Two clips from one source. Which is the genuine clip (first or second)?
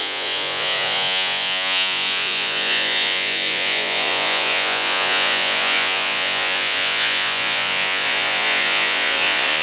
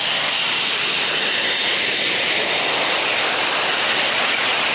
second